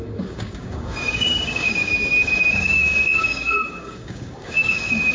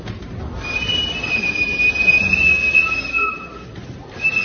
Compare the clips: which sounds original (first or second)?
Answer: second